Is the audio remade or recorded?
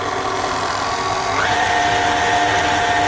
recorded